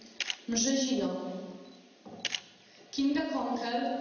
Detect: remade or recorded recorded